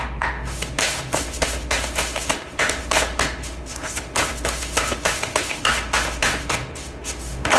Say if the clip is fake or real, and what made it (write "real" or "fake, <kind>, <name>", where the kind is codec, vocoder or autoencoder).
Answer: fake, autoencoder, DAC-VAE